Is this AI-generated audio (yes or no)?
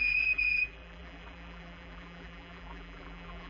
yes